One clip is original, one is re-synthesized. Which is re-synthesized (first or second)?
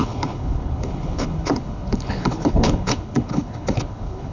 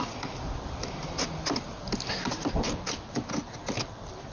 first